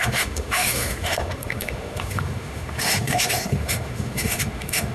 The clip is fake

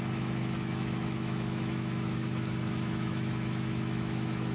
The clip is fake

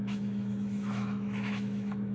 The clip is fake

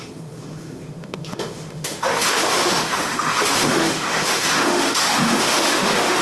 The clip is fake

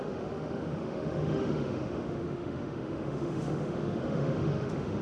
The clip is fake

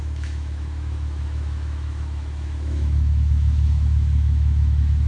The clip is fake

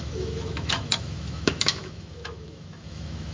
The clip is fake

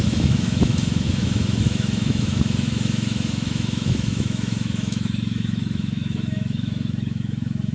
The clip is fake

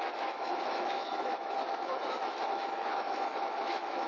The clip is fake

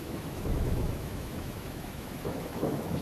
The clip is fake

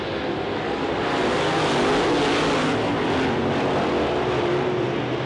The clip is real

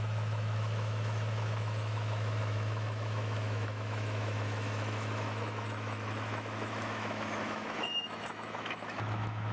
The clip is fake